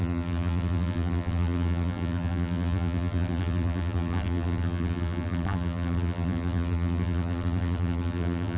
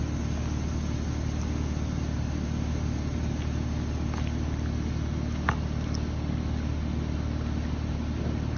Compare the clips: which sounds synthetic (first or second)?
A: first